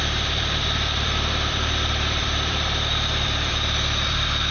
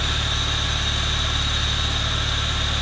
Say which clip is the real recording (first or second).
second